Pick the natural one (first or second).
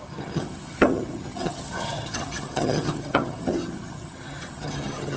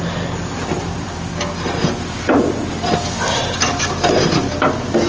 second